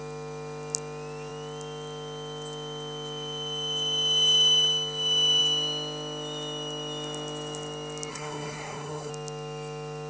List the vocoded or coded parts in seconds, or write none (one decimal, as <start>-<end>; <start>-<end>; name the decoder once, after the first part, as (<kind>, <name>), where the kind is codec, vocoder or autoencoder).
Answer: 8.1-9.1 (codec, SNAC)